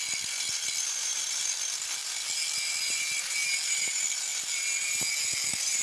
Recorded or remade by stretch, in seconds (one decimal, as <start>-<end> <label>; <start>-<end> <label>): 0.0-5.8 recorded